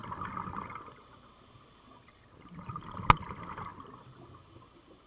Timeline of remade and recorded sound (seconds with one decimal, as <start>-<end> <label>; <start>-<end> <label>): 0.0-5.1 recorded